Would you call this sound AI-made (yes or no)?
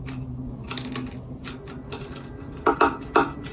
no